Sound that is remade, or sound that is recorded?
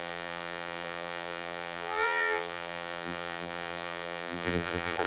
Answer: remade